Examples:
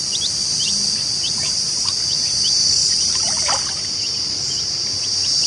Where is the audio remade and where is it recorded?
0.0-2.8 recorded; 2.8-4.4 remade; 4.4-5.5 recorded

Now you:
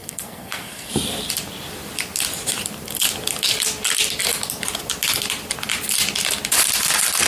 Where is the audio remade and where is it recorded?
0.0-0.9 remade; 0.9-7.3 recorded

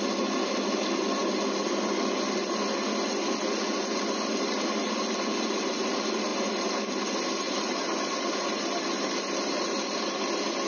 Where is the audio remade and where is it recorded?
0.0-10.7 recorded

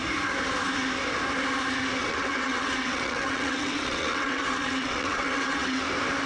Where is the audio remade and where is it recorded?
0.0-2.0 recorded; 2.0-5.8 remade; 5.8-6.3 recorded

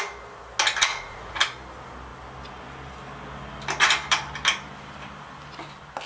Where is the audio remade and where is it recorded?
0.0-0.9 recorded; 0.9-1.4 remade; 1.4-6.1 recorded